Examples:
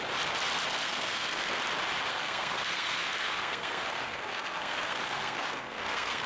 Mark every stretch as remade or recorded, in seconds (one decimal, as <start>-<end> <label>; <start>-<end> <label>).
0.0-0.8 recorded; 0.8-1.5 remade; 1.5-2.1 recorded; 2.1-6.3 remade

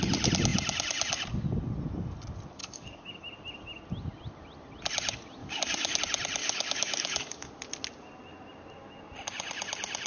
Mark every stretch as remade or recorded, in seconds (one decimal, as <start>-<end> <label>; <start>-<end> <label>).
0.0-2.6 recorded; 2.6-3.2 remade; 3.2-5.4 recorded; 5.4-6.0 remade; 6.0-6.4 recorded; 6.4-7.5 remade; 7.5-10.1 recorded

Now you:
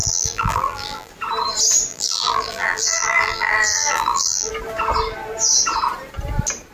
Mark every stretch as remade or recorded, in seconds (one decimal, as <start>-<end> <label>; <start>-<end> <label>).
0.0-1.1 remade; 1.1-1.9 recorded; 1.9-4.5 remade; 4.5-6.7 recorded

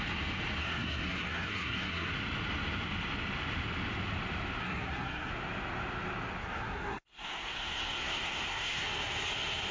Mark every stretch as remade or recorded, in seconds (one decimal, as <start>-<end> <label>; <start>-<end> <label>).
0.0-0.6 recorded; 0.6-2.1 remade; 2.1-4.6 recorded; 4.6-5.3 remade; 5.3-6.4 recorded; 6.4-8.8 remade; 8.8-9.7 recorded